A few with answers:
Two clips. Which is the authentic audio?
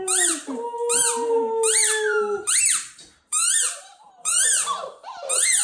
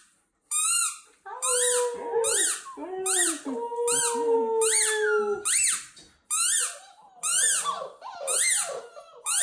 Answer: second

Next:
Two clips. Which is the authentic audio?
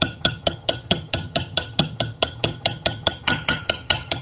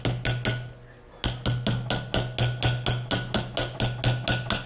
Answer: second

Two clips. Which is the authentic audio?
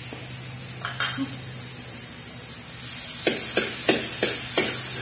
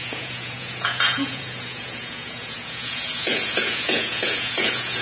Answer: first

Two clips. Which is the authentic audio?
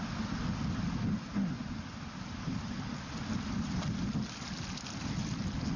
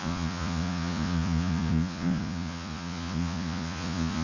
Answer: first